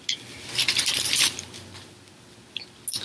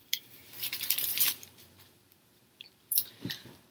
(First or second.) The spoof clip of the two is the second